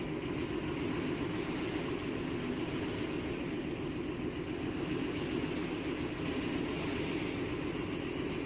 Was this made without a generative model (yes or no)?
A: yes